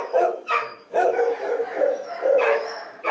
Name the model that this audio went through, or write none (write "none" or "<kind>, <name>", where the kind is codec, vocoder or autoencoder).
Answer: autoencoder, DAC-VAE